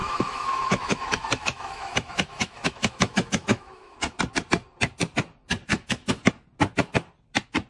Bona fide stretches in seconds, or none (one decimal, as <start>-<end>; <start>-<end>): 4.2-5.7; 6.3-7.7